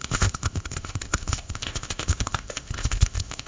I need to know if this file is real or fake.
fake